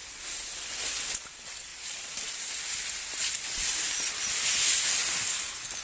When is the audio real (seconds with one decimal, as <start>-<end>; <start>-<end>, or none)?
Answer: 0.0-1.7; 2.5-5.8